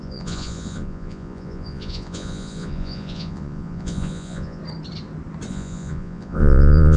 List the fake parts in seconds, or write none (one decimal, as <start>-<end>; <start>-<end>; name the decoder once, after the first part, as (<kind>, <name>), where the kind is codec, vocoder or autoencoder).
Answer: 0.0-4.6 (vocoder, Vocos); 5.5-7.0